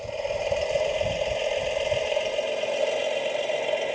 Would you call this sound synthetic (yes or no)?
no